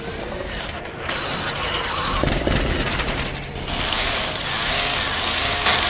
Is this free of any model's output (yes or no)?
yes